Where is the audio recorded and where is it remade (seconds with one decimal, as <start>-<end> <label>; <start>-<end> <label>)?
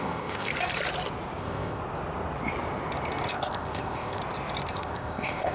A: 0.0-0.5 remade; 0.5-1.4 recorded; 1.4-1.8 remade; 1.8-3.3 recorded; 3.3-4.2 remade; 4.2-4.7 recorded; 4.7-5.5 remade